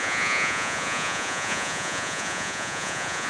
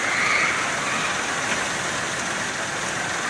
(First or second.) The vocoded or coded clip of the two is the first